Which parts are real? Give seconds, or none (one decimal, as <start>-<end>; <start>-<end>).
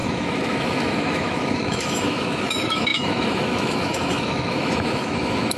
none